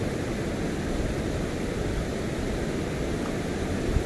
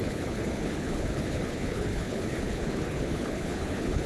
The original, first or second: first